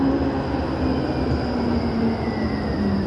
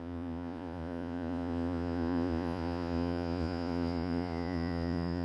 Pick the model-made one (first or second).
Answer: second